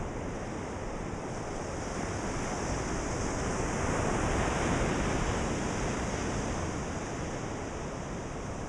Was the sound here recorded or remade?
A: recorded